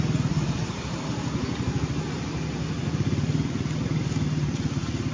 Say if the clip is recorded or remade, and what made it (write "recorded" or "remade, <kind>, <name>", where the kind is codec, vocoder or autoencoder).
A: recorded